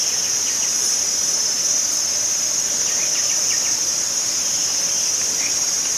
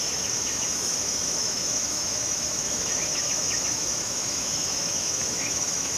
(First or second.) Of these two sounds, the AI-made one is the second